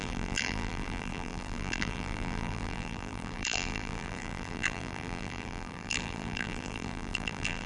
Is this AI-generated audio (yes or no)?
yes